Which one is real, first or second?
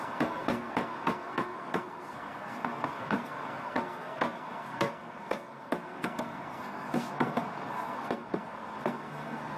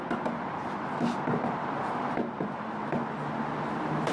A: second